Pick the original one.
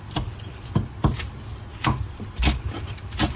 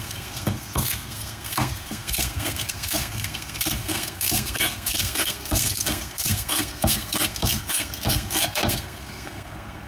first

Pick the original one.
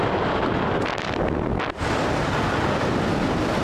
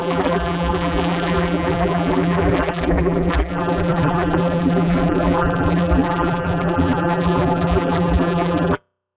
first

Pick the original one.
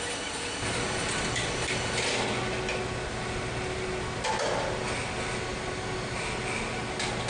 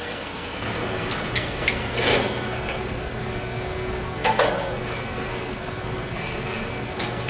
first